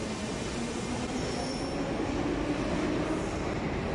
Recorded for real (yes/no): yes